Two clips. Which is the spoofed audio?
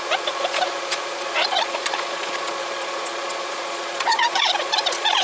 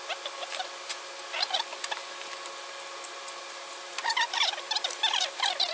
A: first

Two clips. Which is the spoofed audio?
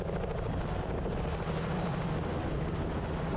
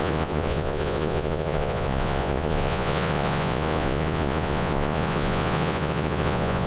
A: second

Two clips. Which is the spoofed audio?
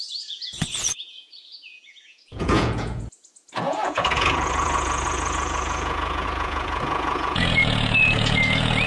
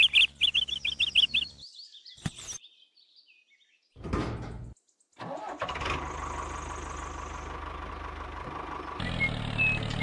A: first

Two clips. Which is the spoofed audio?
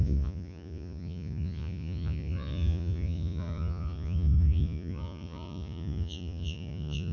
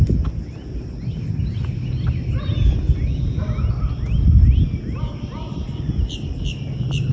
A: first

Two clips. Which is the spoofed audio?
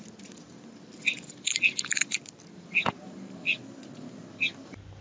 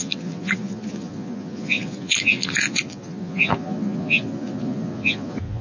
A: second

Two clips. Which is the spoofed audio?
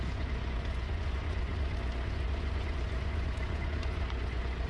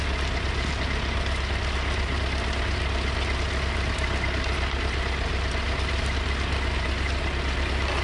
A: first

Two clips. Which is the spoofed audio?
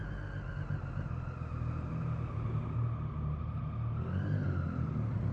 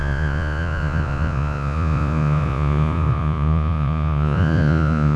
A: second